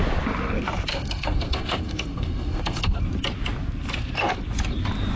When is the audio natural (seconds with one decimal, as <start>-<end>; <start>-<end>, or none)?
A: 0.0-0.9; 3.0-5.2